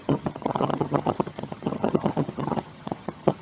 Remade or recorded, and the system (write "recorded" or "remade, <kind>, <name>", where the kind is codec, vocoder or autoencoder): remade, vocoder, HiFi-GAN